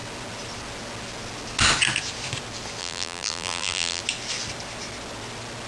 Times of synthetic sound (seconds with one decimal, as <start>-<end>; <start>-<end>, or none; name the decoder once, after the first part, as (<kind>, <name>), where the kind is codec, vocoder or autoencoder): 2.8-4.0 (vocoder, BigVGAN v2)